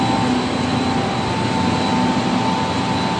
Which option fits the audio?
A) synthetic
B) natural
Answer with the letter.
B